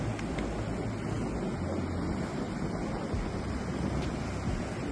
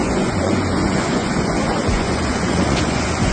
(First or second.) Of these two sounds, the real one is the first